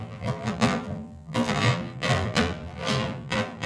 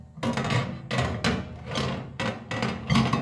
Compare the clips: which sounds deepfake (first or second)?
first